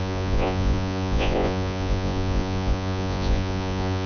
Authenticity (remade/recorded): remade